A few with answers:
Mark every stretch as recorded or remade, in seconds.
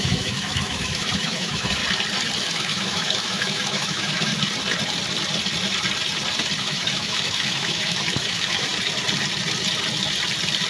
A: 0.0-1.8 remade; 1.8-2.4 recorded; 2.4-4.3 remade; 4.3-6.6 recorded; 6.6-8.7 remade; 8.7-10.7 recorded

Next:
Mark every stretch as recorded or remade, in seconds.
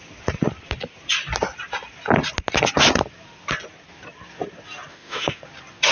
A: 0.0-4.9 recorded; 4.9-5.4 remade; 5.4-5.9 recorded